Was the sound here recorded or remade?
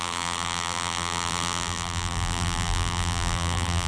remade